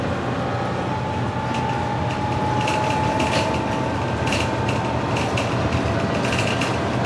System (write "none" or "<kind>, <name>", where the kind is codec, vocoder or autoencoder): none